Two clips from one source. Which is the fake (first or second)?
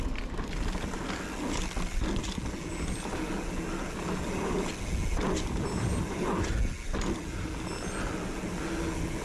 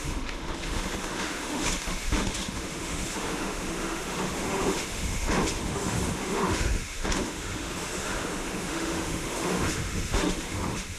second